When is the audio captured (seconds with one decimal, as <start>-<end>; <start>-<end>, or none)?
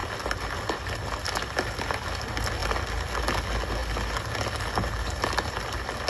0.0-6.1